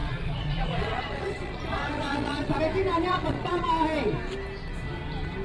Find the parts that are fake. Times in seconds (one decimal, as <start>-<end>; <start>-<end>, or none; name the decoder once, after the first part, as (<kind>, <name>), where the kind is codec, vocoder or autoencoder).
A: 0.0-2.6 (vocoder, Vocos); 3.1-3.7